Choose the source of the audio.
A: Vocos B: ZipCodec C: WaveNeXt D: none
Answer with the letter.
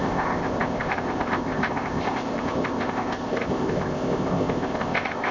B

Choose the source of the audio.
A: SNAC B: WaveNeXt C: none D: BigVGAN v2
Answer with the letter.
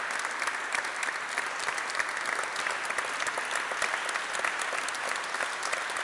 C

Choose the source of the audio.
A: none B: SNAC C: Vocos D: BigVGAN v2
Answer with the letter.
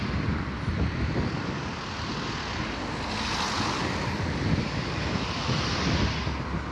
A